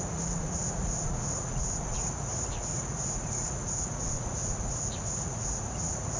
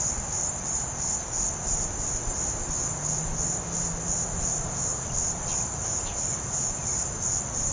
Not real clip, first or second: first